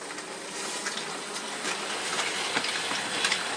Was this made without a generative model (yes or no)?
yes